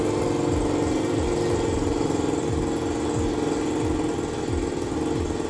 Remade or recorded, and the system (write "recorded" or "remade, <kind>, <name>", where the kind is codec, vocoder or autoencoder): recorded